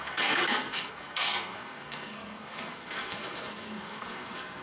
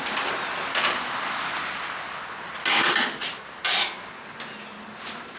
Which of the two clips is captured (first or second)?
second